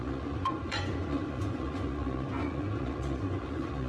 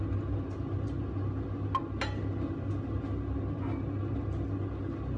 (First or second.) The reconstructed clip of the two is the first